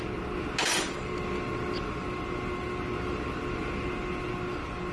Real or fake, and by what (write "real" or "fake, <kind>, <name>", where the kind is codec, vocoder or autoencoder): real